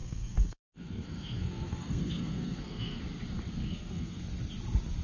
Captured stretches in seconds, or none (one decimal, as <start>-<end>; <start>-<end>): 3.0-3.6; 4.2-5.0